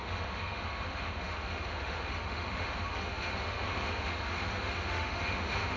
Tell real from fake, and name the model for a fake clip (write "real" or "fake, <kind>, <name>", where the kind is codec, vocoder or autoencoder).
fake, autoencoder, DAC-VAE